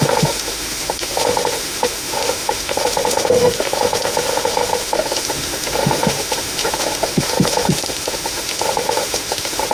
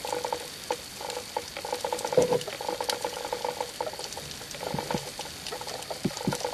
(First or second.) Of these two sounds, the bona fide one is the second